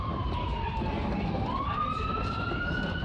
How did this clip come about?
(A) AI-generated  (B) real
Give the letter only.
B